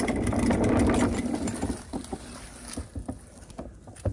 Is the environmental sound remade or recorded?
recorded